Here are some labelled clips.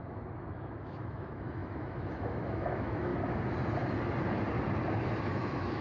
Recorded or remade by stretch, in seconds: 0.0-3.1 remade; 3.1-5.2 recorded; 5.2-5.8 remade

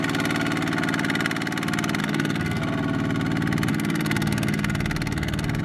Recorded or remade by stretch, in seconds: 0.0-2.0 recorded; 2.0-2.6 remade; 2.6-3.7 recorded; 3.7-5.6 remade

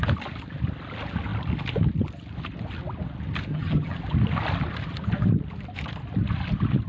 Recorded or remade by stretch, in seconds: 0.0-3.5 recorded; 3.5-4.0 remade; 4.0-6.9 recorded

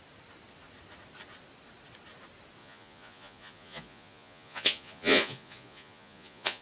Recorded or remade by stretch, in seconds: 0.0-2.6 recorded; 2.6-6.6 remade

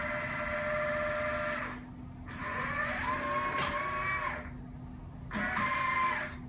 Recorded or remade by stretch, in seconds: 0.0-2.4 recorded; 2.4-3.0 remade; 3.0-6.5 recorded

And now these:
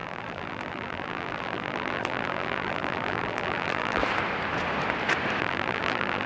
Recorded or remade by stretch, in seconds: 0.0-4.0 remade; 4.0-5.4 recorded; 5.4-6.3 remade

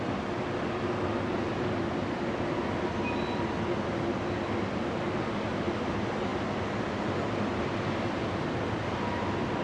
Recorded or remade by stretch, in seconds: 0.0-9.6 recorded